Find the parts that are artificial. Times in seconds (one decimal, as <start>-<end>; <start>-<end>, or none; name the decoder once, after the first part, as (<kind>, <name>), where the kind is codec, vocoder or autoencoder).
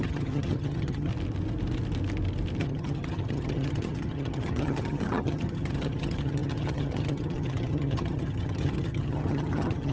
0.0-1.1 (vocoder, HiFi-GAN); 2.6-9.9